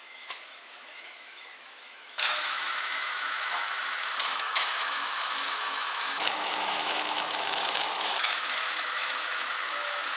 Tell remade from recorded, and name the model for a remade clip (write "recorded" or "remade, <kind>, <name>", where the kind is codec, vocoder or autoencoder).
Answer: remade, autoencoder, DAC-VAE